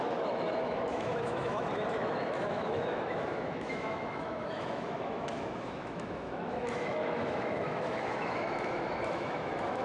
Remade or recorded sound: remade